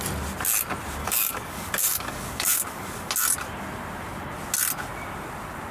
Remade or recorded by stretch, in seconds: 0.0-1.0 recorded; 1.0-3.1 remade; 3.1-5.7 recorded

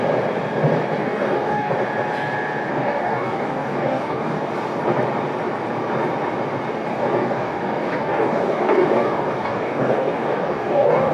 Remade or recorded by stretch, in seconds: 0.0-1.0 recorded; 1.0-1.7 remade; 1.7-2.7 recorded; 2.7-4.5 remade; 4.5-6.9 recorded; 6.9-11.1 remade

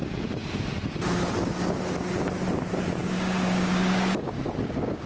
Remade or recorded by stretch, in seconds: 0.0-3.0 recorded; 3.0-5.1 remade

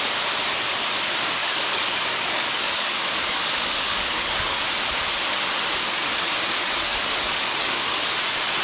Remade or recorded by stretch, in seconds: 0.0-1.4 recorded; 1.4-4.6 remade; 4.6-6.6 recorded; 6.6-8.1 remade; 8.1-8.6 recorded

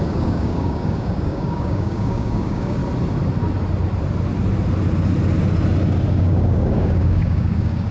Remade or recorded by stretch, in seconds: 0.0-2.8 remade; 2.8-6.1 recorded; 6.1-7.9 remade

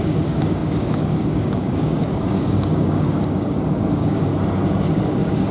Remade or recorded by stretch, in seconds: 0.0-4.3 remade; 4.3-4.9 recorded; 4.9-5.5 remade

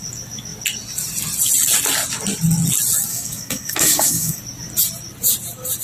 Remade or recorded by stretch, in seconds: 0.0-3.1 recorded; 3.1-4.4 remade; 4.4-5.8 recorded